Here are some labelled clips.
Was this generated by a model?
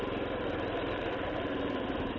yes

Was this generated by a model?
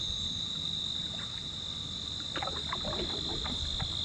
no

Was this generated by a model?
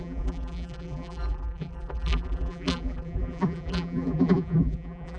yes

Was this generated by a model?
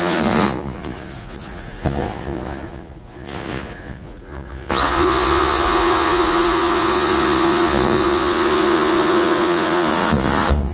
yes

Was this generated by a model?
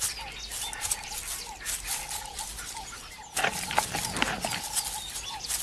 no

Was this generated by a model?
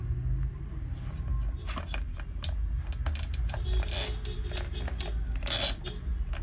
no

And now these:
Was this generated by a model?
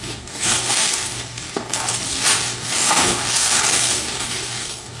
yes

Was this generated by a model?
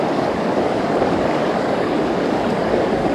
yes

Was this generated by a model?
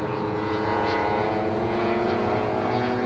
yes